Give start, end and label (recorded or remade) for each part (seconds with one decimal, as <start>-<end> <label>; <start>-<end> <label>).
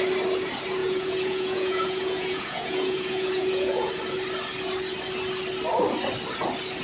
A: 0.0-0.8 recorded; 0.8-3.9 remade; 3.9-6.8 recorded